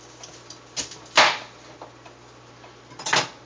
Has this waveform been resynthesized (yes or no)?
no